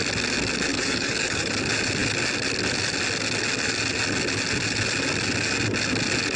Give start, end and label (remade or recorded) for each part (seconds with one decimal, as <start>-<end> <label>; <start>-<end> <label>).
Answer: 0.0-0.7 recorded; 0.7-1.5 remade; 1.5-6.4 recorded